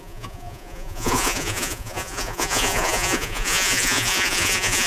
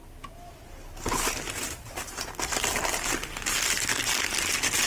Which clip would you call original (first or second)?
second